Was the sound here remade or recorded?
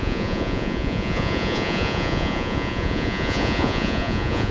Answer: remade